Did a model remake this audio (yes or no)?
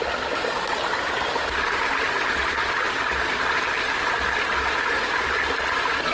no